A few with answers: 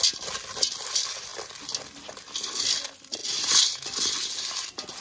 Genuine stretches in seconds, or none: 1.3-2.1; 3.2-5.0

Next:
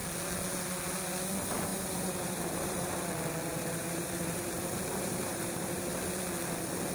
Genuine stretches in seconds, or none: 0.0-1.7; 3.1-3.5; 6.0-6.9

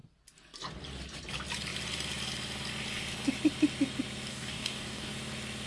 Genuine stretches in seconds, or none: 0.0-4.3; 5.1-5.7